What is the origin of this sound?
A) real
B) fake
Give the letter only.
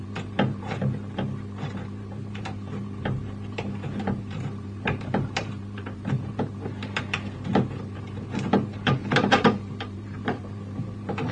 B